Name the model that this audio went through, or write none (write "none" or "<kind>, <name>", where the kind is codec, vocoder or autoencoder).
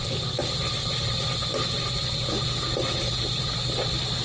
none